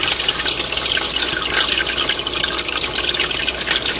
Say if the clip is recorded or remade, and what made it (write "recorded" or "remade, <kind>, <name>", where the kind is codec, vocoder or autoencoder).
recorded